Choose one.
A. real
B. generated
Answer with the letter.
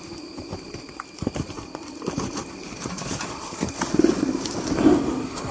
A